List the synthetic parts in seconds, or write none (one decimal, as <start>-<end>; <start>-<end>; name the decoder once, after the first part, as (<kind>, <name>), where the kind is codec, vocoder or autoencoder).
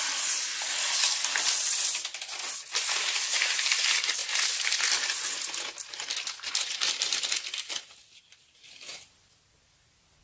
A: none